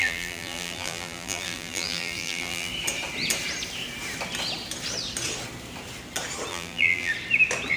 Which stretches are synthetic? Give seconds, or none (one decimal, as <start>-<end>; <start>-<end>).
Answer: 0.0-2.7; 6.5-7.1